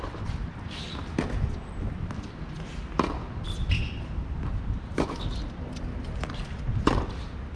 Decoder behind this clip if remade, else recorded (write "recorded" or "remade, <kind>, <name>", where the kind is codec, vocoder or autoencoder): recorded